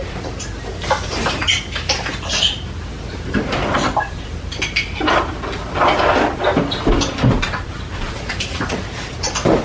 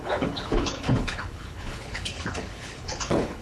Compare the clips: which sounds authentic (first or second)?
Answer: first